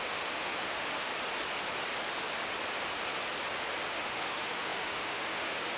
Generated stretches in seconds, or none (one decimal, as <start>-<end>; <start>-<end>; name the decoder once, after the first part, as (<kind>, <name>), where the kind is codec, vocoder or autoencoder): 0.0-1.1 (autoencoder, DAC-VAE); 3.9-5.8

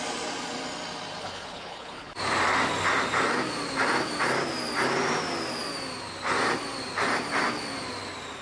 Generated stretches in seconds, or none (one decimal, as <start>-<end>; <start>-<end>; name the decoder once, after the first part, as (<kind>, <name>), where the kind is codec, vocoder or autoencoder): 1.2-2.1 (codec, HILCodec)